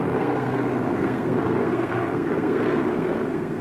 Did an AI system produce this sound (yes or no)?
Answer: yes